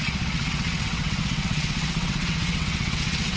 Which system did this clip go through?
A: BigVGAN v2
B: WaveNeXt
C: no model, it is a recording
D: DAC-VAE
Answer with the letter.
B